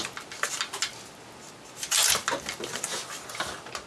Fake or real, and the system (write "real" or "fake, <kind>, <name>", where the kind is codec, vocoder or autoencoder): real